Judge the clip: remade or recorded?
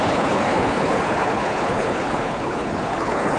remade